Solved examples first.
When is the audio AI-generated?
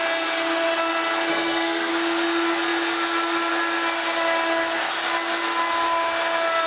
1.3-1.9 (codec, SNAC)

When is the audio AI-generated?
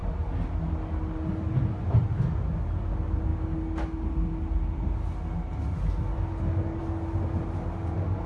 none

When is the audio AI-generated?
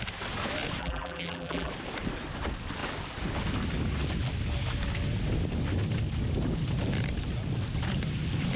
0.8-1.7 (vocoder, BigVGAN v2)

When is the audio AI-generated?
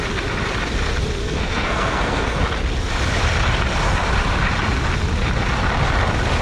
1.2-2.4 (codec, SNAC)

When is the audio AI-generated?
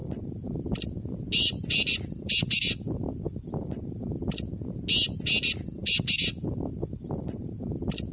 0.0-4.0 (vocoder, BigVGAN v2); 5.8-7.5